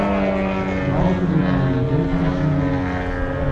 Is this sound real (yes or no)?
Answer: yes